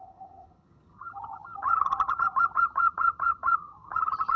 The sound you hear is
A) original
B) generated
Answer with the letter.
B